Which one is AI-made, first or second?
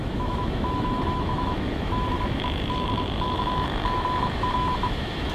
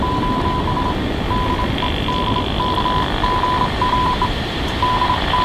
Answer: first